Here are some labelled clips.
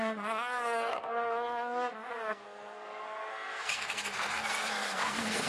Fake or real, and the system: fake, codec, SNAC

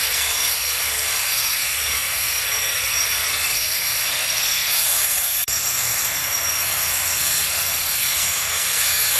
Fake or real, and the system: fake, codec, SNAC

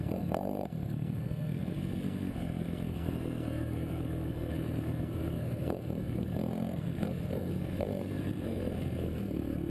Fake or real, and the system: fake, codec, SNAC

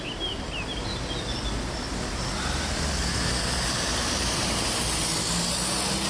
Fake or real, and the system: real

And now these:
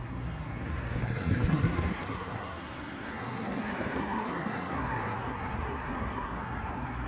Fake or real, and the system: fake, codec, SNAC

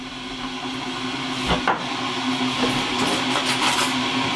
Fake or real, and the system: real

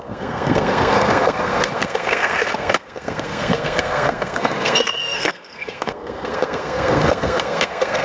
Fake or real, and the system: fake, codec, SNAC